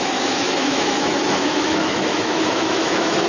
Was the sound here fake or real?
fake